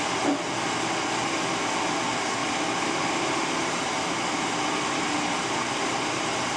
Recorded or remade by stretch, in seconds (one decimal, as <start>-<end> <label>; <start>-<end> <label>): 0.0-6.6 recorded